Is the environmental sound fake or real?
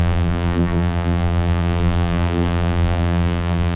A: fake